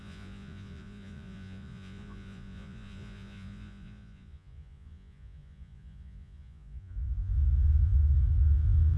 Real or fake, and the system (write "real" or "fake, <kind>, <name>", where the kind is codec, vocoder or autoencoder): fake, vocoder, Vocos